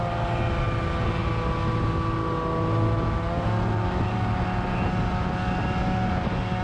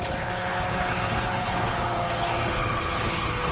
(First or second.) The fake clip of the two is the second